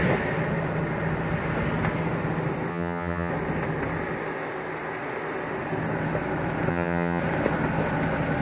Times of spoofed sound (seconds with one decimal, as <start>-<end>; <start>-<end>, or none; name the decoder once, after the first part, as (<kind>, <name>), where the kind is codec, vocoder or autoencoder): 2.7-3.3 (vocoder, HiFi-GAN); 6.7-7.2